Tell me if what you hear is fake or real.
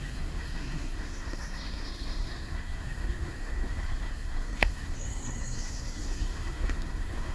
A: fake